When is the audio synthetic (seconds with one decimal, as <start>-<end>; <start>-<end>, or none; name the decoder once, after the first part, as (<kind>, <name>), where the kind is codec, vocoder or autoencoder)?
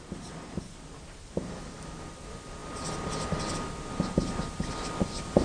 none